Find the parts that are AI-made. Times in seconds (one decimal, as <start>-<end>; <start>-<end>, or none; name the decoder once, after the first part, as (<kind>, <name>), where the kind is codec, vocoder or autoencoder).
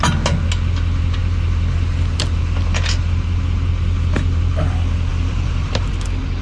1.2-2.4 (vocoder, BigVGAN v2); 5.1-5.9